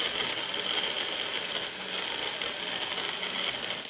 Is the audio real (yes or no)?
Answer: yes